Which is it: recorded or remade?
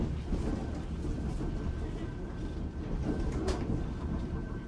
recorded